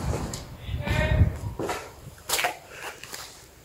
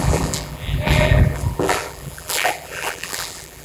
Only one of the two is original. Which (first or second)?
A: first